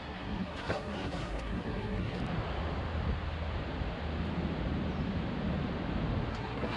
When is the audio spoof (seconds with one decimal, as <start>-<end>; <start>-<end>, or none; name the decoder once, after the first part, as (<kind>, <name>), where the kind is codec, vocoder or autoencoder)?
0.0-2.2 (codec, SNAC); 6.3-6.8